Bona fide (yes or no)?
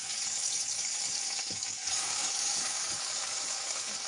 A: no